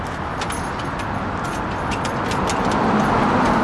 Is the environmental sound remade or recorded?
recorded